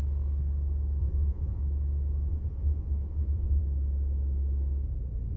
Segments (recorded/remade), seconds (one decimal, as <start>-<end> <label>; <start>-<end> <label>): 0.0-1.0 recorded; 1.0-1.6 remade; 1.6-2.3 recorded; 2.3-3.6 remade; 3.6-5.4 recorded